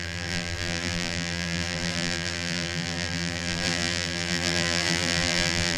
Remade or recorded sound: remade